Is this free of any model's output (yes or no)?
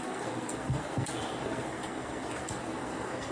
no